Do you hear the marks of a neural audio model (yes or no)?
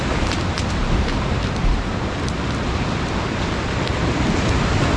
no